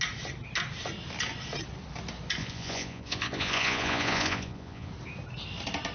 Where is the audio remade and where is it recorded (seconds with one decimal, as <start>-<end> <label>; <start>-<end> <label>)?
0.0-2.4 recorded; 2.4-4.9 remade; 4.9-5.9 recorded